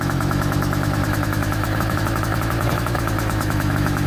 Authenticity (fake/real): fake